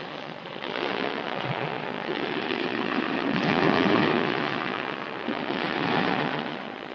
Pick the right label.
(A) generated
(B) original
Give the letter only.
A